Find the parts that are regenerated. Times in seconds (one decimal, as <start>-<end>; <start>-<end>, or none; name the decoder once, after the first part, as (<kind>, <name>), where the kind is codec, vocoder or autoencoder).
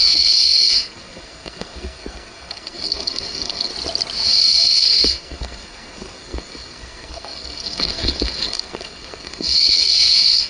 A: 0.0-3.7 (codec, SNAC); 4.4-10.5